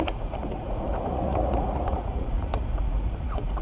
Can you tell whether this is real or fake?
fake